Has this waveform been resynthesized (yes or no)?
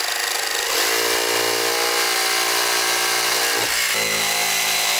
no